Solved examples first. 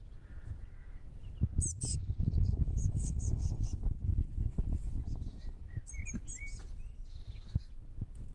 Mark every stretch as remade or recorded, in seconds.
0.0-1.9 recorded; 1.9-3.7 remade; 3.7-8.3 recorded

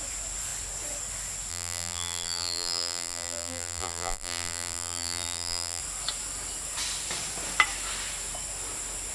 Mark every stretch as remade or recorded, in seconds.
0.0-1.5 recorded; 1.5-5.8 remade; 5.8-9.1 recorded